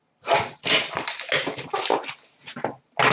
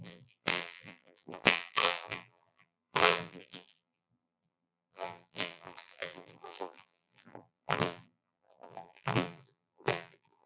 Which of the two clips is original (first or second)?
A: first